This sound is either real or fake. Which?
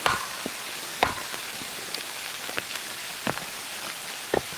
fake